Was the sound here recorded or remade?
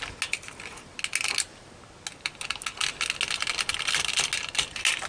recorded